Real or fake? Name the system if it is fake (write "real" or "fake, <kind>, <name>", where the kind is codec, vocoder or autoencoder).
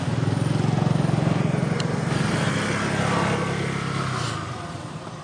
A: real